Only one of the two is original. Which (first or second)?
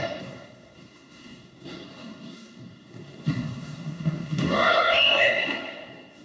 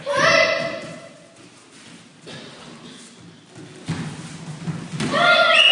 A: second